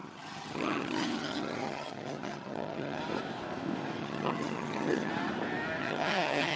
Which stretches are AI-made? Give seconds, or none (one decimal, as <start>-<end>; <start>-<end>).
0.0-3.0; 4.0-5.1; 5.8-6.6